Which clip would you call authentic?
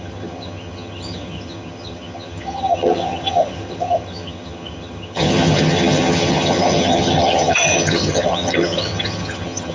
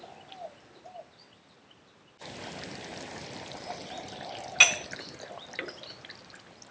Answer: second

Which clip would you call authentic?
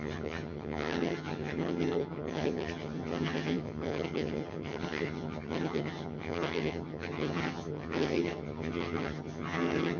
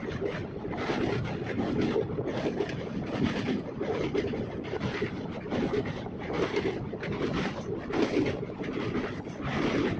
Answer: second